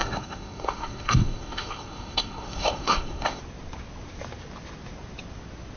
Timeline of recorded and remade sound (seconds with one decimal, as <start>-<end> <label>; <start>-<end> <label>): 0.0-3.4 remade; 3.4-5.8 recorded